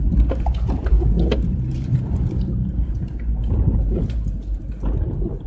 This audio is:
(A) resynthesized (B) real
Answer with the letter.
A